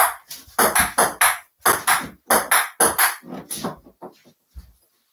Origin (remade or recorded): recorded